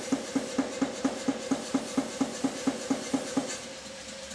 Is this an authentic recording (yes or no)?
yes